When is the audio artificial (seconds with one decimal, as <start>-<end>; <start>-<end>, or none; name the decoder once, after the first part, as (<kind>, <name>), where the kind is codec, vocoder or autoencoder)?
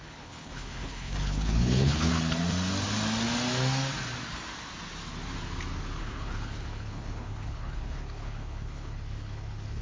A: 0.0-2.1 (codec, HILCodec); 6.0-9.8